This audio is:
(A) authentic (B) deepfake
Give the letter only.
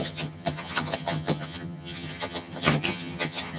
B